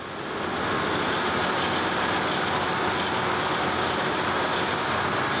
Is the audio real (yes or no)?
yes